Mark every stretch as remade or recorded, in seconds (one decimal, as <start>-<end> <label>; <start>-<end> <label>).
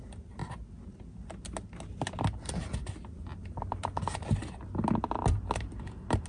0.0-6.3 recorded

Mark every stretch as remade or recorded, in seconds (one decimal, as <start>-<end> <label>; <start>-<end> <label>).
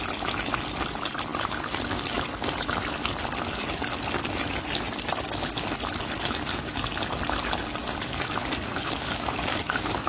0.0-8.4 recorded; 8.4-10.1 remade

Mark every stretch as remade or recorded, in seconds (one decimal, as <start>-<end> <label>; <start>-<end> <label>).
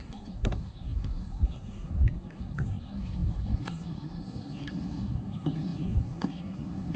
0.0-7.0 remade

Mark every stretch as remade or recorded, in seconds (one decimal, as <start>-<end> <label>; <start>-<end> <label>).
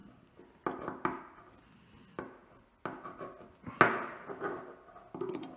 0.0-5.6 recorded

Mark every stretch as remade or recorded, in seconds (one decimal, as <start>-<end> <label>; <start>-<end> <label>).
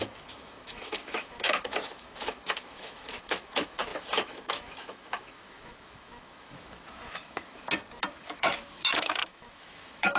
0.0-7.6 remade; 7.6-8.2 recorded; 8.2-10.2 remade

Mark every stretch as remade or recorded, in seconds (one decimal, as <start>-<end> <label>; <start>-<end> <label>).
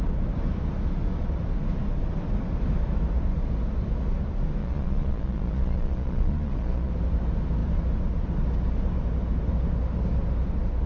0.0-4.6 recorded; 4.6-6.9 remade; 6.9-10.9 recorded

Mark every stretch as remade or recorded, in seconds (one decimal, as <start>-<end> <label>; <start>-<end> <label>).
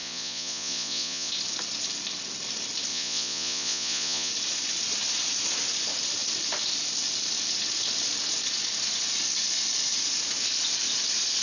0.0-1.3 remade; 1.3-2.9 recorded; 2.9-4.3 remade; 4.3-11.4 recorded